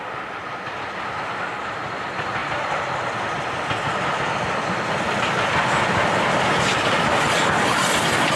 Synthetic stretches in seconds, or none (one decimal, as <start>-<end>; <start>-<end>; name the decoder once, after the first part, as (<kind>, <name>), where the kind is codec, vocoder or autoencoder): 2.4-3.2 (vocoder, BigVGAN v2)